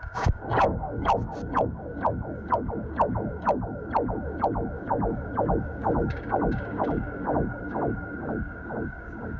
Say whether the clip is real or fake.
fake